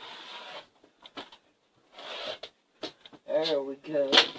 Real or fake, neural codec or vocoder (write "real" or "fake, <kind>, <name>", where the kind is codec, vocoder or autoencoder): real